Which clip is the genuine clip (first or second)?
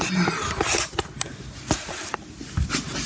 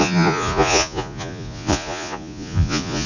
first